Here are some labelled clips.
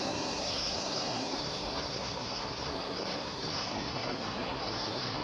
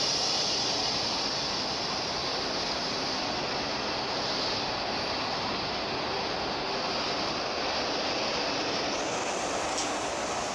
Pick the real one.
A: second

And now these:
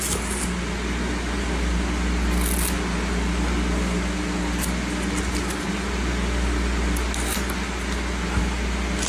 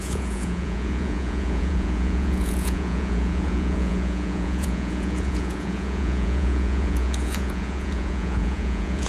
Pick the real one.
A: first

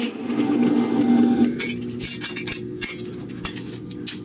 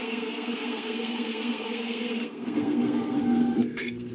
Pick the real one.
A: first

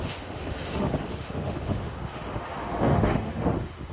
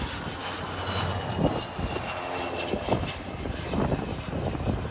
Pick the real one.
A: second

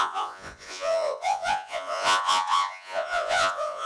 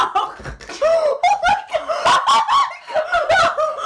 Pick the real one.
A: second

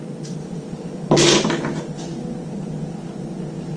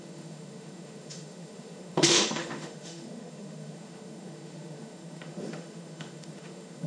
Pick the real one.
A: first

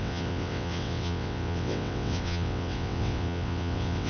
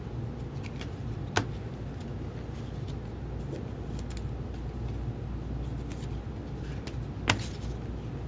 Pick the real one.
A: second